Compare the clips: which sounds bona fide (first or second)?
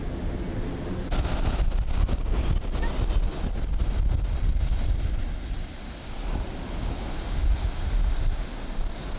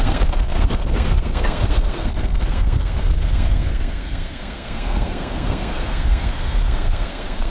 first